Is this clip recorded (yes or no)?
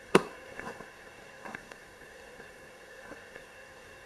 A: no